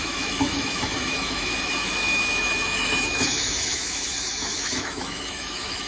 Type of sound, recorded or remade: remade